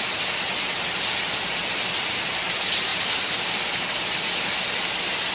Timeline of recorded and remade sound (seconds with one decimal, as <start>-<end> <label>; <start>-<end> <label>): 0.0-5.3 recorded